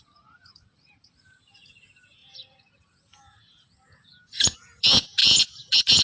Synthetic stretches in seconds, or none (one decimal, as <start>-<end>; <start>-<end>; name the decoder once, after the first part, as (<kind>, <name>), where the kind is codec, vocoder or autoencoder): 0.0-6.0 (vocoder, Vocos)